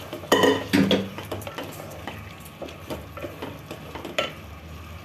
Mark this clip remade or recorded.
recorded